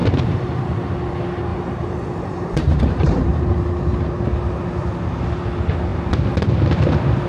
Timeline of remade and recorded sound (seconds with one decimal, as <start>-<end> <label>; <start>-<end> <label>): 0.0-0.6 remade; 0.6-1.5 recorded; 1.5-3.4 remade; 3.4-7.3 recorded